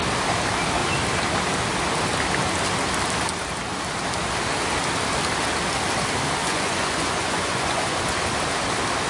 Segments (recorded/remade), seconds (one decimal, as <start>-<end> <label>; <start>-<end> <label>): 0.0-6.4 recorded; 6.4-8.0 remade; 8.0-9.1 recorded